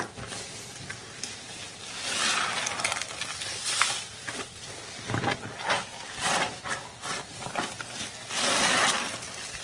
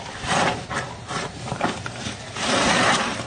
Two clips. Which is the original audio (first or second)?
first